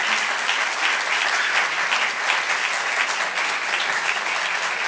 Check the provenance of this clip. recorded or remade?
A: recorded